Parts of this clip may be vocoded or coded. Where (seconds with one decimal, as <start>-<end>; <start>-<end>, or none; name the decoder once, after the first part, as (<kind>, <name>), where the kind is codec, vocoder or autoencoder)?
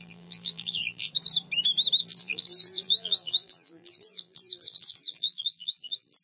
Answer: 0.0-1.1 (vocoder, BigVGAN v2); 2.0-6.2